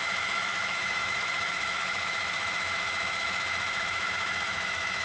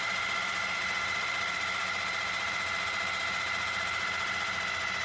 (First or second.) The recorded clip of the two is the second